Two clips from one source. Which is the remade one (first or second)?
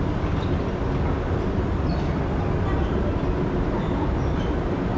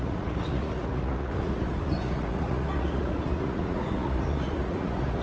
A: second